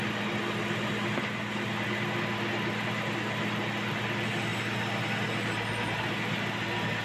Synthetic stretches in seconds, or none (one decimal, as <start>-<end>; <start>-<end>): none